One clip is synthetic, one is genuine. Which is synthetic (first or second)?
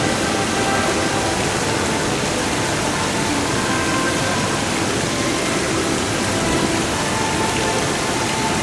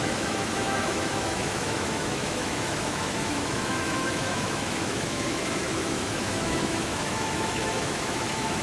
second